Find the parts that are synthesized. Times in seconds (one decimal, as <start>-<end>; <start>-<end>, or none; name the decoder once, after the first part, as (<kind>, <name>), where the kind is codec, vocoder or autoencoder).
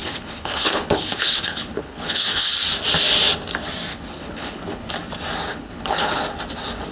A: 0.0-2.5 (codec, HILCodec); 3.9-4.9; 5.5-6.2